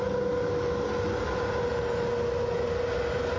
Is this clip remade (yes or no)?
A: no